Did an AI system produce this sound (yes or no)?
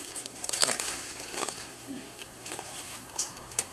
yes